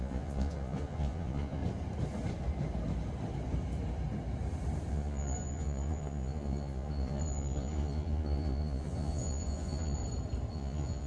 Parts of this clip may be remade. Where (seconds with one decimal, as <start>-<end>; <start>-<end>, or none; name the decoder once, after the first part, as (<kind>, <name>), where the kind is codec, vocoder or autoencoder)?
0.0-1.6 (vocoder, Vocos); 4.9-10.0; 10.5-11.1